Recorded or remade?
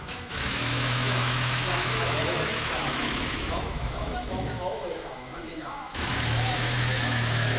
remade